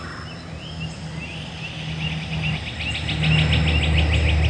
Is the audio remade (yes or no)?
no